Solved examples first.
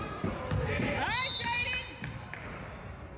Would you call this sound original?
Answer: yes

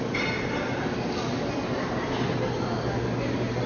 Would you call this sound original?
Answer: yes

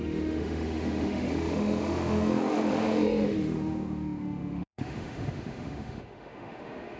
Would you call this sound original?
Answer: no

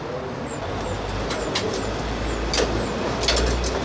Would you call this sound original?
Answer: yes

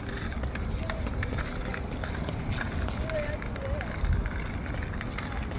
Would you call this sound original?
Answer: yes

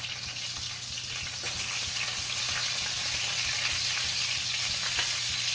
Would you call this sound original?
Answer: yes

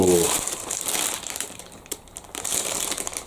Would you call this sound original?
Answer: no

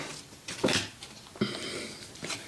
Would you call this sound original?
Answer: yes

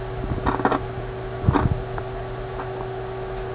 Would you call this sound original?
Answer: yes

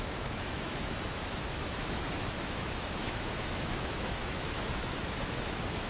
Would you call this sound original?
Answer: no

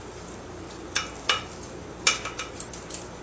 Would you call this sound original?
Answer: yes